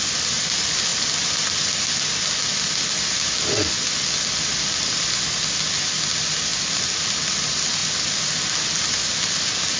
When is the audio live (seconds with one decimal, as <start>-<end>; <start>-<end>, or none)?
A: 0.0-9.8